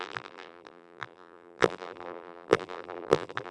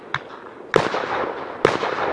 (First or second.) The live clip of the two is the second